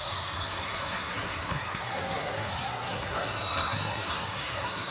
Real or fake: fake